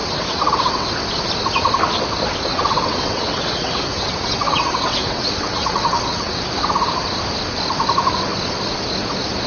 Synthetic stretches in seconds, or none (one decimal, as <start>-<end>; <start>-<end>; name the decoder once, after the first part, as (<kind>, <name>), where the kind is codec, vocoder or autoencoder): 0.0-0.9 (vocoder, WaveNeXt); 2.5-6.4